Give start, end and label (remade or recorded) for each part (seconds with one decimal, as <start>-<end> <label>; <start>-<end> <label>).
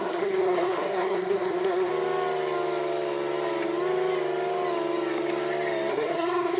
0.0-1.9 remade; 1.9-5.9 recorded; 5.9-6.6 remade